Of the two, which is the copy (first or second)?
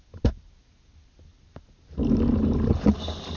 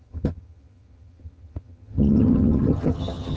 second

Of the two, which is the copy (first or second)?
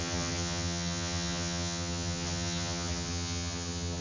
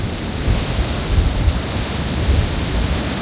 first